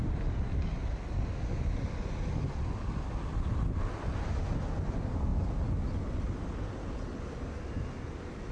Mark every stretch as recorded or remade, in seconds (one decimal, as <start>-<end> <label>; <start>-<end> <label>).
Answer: 0.0-8.5 recorded